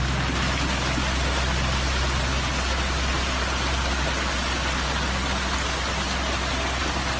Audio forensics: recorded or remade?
recorded